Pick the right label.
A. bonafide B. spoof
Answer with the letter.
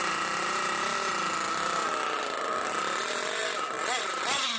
A